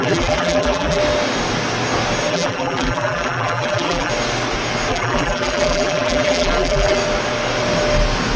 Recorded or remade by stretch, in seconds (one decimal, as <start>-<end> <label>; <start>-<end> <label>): 0.0-1.0 remade; 1.0-2.3 recorded; 2.3-4.1 remade; 4.1-4.9 recorded; 4.9-7.0 remade; 7.0-8.4 recorded